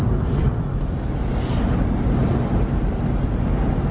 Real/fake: real